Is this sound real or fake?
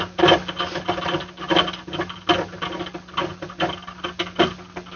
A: real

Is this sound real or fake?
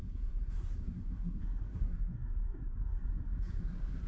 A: fake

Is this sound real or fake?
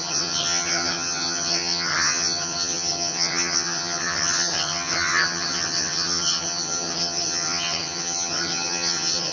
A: fake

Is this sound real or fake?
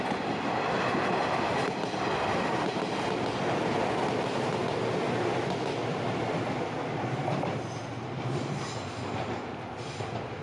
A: real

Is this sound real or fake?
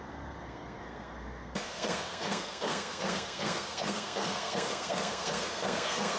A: fake